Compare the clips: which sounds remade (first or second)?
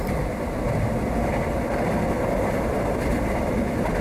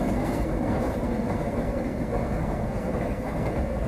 second